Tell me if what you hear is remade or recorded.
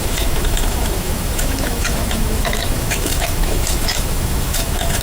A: remade